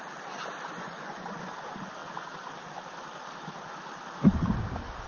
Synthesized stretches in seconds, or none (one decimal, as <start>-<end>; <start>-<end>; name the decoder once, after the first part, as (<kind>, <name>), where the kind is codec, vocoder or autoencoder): 0.7-1.5 (vocoder, Vocos)